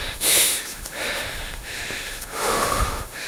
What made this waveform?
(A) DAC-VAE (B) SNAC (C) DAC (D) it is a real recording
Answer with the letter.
A